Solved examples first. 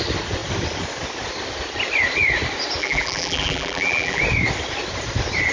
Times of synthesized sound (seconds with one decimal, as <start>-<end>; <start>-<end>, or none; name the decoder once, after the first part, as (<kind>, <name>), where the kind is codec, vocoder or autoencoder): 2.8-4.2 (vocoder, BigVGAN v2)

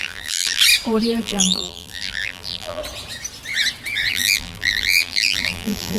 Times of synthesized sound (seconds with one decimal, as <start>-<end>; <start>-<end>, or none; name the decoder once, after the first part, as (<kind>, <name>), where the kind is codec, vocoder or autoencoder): 0.0-0.6 (vocoder, BigVGAN v2); 1.2-2.8; 4.1-6.0

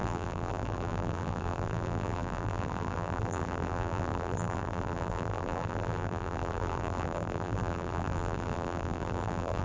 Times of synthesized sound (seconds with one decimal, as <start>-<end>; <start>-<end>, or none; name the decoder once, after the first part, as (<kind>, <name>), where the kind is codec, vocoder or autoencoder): 0.0-9.6 (vocoder, BigVGAN v2)

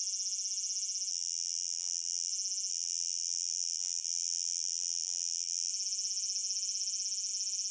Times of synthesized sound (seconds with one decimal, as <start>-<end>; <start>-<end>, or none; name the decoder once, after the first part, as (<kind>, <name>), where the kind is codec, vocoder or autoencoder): 1.1-2.3 (vocoder, BigVGAN v2); 2.7-5.7

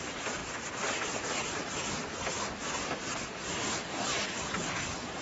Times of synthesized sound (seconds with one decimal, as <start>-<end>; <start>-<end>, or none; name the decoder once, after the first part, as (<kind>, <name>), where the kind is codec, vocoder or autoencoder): 0.0-0.4 (vocoder, BigVGAN v2); 1.2-2.0; 4.0-5.2